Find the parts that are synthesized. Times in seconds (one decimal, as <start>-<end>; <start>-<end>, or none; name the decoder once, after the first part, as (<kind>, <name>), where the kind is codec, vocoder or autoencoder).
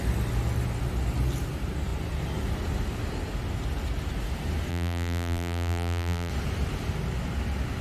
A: 4.7-6.3 (vocoder, BigVGAN v2)